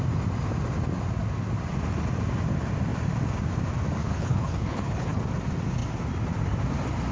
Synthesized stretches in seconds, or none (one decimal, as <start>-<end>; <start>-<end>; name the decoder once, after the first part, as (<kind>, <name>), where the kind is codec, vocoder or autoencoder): 4.0-5.2 (codec, HILCodec)